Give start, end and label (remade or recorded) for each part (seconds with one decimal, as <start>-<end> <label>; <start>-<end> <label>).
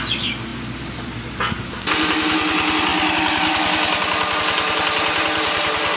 0.0-6.0 recorded